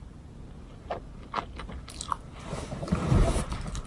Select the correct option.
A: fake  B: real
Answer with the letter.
B